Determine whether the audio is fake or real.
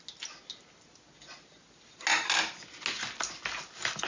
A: real